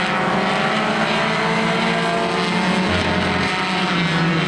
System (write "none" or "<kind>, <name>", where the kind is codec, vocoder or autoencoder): none